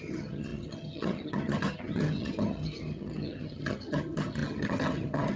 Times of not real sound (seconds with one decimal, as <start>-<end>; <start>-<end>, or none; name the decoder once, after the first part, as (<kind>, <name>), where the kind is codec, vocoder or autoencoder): 0.0-5.4 (vocoder, HiFi-GAN)